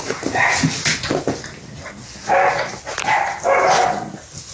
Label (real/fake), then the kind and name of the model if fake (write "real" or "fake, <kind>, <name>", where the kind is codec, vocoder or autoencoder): real